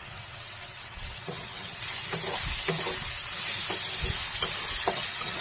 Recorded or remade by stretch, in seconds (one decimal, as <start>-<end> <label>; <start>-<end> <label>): 0.0-1.7 remade; 1.7-4.9 recorded; 4.9-5.4 remade